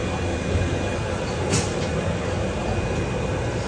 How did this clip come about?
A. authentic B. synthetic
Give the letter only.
A